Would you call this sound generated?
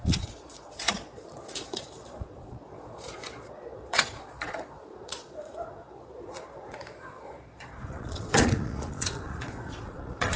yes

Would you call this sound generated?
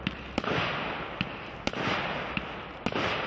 no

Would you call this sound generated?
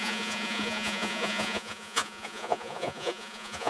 yes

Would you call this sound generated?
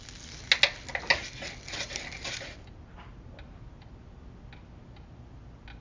no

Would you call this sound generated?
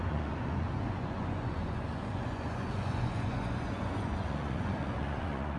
yes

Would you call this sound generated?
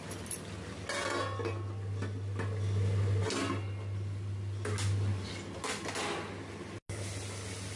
no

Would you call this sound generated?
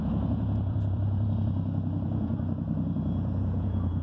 yes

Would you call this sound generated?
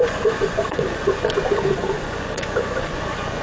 yes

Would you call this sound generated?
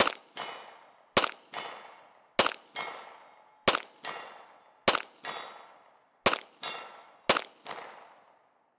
no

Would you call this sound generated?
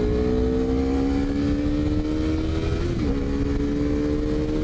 no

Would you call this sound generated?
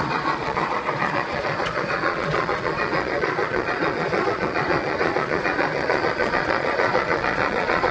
yes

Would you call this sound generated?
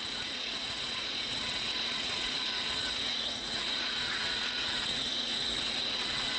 yes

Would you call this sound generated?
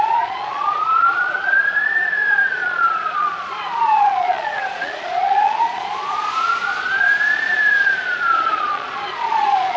yes